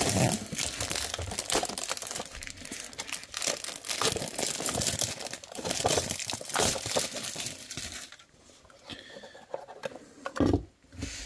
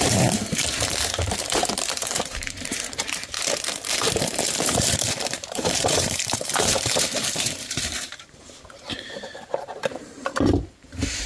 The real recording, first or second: first